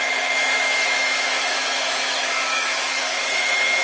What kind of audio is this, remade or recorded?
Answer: remade